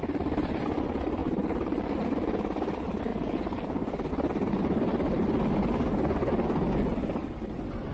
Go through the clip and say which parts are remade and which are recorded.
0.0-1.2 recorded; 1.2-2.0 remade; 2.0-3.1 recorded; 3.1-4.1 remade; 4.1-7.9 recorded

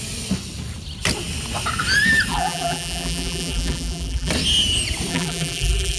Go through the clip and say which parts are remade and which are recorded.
0.0-2.3 recorded; 2.3-4.3 remade; 4.3-5.1 recorded; 5.1-6.0 remade

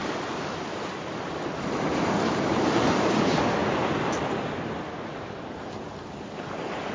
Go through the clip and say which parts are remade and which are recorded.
0.0-6.9 remade